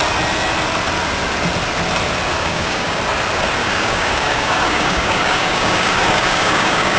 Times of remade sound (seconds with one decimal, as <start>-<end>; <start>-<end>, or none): 2.4-3.0; 3.6-7.0